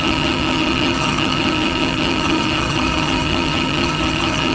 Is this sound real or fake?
fake